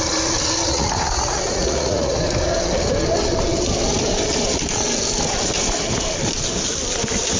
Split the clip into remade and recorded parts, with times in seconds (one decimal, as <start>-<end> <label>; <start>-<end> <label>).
0.0-0.7 recorded; 0.7-2.2 remade; 2.2-7.4 recorded